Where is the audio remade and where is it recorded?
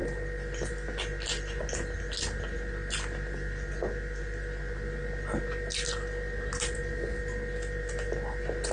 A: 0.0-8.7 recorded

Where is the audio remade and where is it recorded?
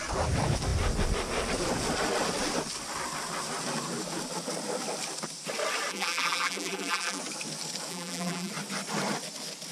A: 0.0-5.9 recorded; 5.9-7.2 remade; 7.2-7.9 recorded; 7.9-8.5 remade; 8.5-9.7 recorded